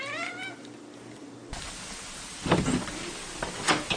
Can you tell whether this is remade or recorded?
recorded